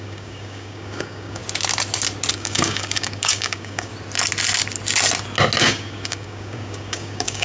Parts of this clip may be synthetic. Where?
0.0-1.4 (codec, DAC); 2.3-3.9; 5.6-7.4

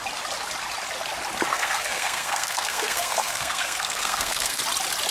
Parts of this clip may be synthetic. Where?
1.5-4.6 (codec, SNAC)

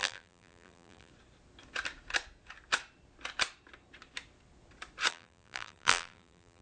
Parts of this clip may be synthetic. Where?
0.0-1.1 (vocoder, BigVGAN v2); 5.1-6.6

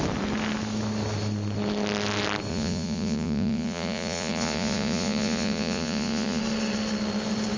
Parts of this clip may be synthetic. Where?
2.5-6.4 (vocoder, Vocos)